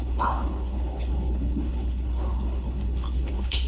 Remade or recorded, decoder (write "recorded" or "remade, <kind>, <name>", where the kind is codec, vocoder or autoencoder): remade, codec, HILCodec